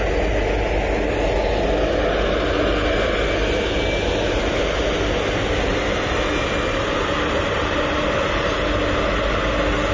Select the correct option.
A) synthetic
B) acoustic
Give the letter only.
B